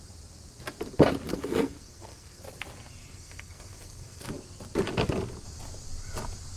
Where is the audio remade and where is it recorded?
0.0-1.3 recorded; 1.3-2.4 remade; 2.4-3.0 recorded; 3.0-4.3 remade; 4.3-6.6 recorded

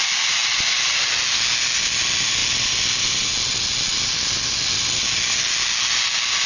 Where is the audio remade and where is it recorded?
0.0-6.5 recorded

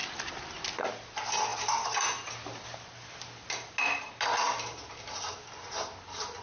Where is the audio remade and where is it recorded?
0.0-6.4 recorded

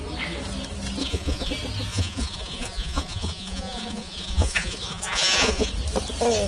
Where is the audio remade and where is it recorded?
0.0-1.0 recorded; 1.0-1.5 remade; 1.5-1.9 recorded; 1.9-5.7 remade; 5.7-6.5 recorded